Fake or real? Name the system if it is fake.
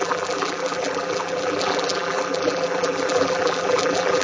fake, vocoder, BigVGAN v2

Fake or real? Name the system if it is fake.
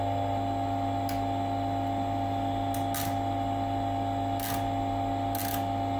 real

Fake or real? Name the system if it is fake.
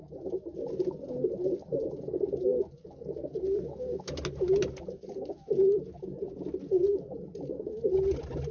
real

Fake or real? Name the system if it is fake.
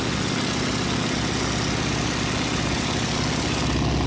real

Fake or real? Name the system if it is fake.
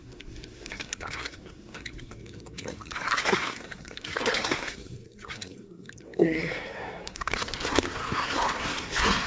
fake, codec, SNAC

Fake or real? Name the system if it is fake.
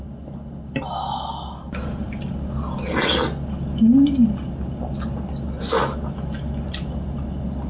real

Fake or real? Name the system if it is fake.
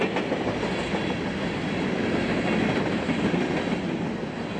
real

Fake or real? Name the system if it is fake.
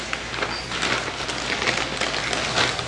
real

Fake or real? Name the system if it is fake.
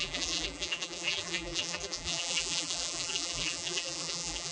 fake, vocoder, BigVGAN v2